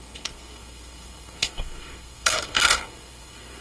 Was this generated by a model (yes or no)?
yes